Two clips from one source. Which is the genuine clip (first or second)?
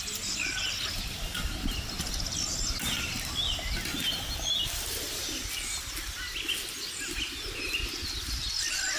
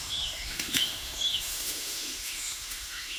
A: first